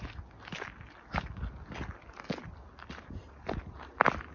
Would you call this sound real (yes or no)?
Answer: yes